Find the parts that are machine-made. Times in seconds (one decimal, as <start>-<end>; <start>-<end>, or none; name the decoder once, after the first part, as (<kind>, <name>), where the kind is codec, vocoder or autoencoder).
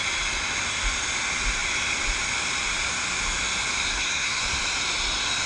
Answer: 3.9-4.4 (codec, SNAC)